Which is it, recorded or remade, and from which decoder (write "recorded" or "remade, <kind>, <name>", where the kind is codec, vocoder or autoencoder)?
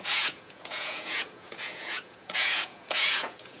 remade, vocoder, Vocos